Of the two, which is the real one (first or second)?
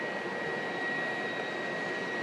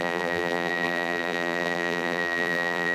first